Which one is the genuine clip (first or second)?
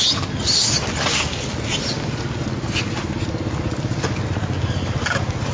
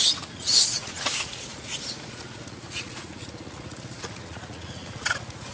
first